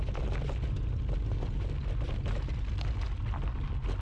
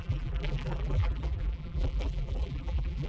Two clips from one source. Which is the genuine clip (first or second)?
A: first